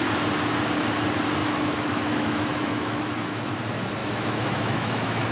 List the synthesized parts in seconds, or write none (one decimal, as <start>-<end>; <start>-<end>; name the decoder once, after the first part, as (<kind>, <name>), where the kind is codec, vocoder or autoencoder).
1.4-3.5 (autoencoder, DAC-VAE); 4.0-5.3